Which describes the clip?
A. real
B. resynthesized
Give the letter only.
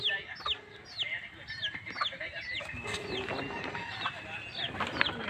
A